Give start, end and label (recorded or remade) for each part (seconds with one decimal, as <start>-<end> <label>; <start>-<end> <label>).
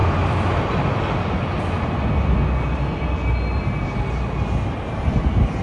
0.0-5.6 recorded